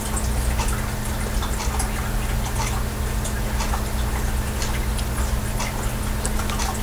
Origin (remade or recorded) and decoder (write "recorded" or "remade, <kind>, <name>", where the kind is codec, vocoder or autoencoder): recorded